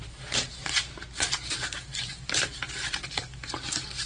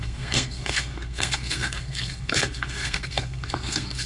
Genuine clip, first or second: first